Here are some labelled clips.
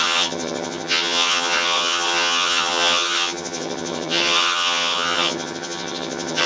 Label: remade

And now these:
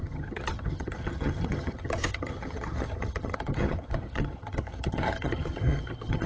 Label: remade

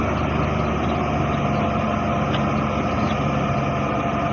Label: recorded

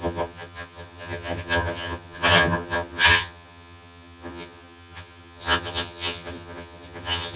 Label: remade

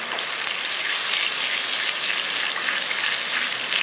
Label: recorded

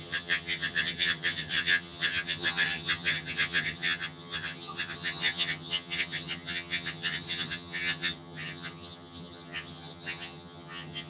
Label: remade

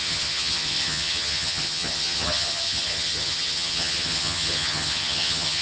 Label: remade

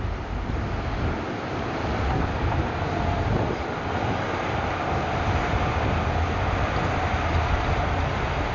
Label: recorded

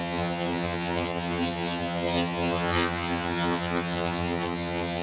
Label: remade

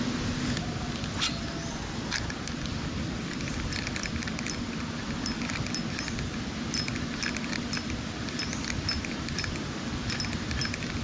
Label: recorded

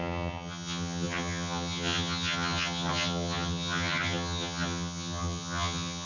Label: remade